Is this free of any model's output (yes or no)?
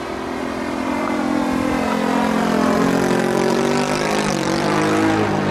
yes